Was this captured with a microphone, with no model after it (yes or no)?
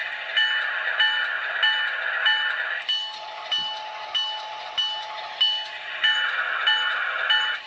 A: yes